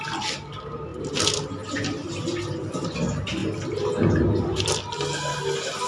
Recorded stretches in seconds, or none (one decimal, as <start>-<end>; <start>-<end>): 0.0-5.9